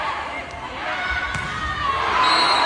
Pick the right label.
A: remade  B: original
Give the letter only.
B